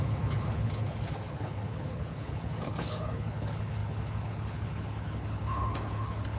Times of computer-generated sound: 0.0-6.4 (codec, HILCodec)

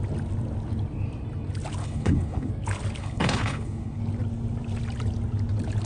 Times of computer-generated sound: 1.8-2.5 (codec, HILCodec); 3.0-4.0

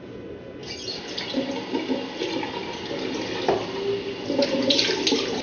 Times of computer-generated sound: none

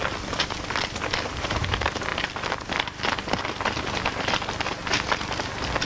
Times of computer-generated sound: none

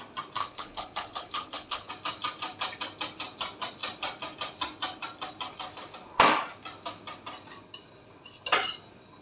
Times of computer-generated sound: 0.4-1.9 (codec, HILCodec)

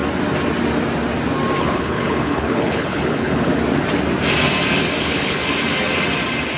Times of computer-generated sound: 1.6-3.5 (codec, HILCodec); 5.0-5.4

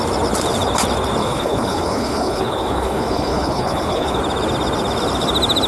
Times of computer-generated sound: 1.2-4.2 (codec, HILCodec)